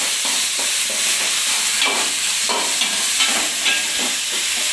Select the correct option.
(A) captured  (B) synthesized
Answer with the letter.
A